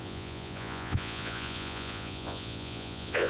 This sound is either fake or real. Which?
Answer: fake